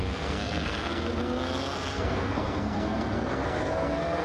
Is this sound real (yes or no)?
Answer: no